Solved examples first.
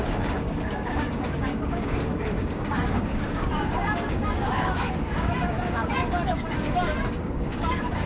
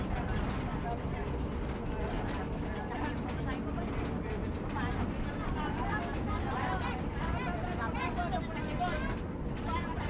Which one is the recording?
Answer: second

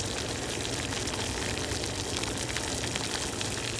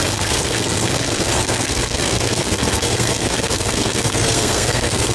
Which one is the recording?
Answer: first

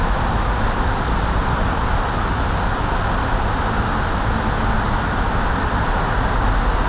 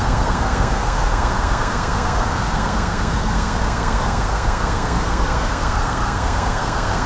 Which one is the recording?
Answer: first